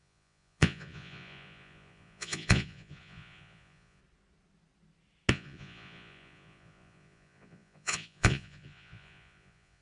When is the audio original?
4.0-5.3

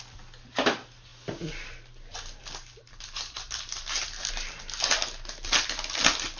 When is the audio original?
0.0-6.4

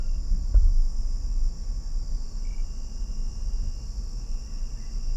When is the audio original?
0.0-2.1; 2.7-5.2

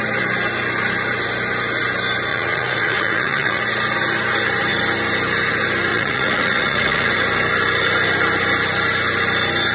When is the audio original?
0.0-2.3; 3.6-5.9; 7.1-9.7

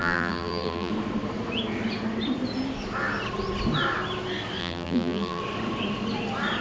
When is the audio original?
0.9-4.6; 5.4-6.6

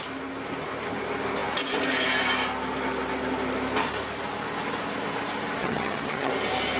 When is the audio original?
0.0-5.6; 6.3-6.8